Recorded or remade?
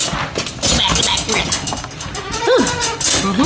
recorded